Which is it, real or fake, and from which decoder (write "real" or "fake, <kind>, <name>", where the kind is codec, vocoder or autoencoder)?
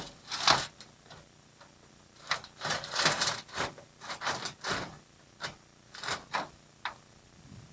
real